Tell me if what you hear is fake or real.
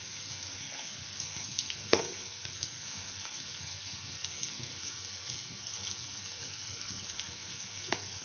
fake